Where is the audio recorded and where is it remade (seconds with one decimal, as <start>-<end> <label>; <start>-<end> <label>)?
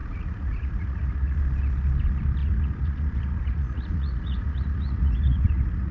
0.0-1.4 remade; 1.4-2.4 recorded; 2.4-5.9 remade